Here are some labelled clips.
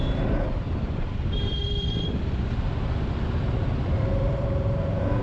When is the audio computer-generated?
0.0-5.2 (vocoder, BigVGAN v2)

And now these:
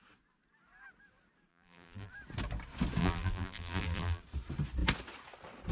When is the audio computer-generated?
1.5-2.1 (vocoder, BigVGAN v2); 3.0-4.2

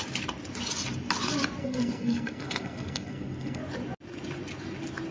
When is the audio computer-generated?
1.6-3.6 (codec, SNAC)

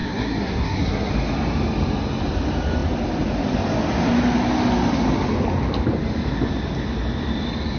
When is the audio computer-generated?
0.0-1.1 (codec, SNAC)

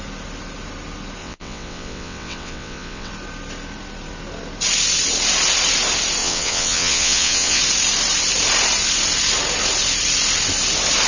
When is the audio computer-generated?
1.2-3.1 (vocoder, WaveNeXt); 6.2-7.6

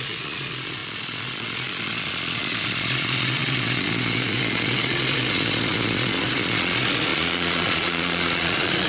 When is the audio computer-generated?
0.0-8.9 (vocoder, Vocos)

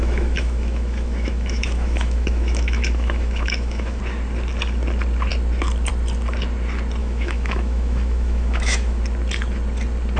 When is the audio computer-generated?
0.0-4.0 (autoencoder, DAC-VAE); 7.0-9.0